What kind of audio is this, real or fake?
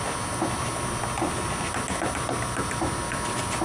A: real